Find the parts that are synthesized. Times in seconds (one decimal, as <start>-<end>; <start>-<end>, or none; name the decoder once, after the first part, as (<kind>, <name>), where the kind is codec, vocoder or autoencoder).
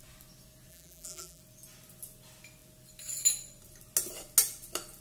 0.7-1.4 (vocoder, BigVGAN v2)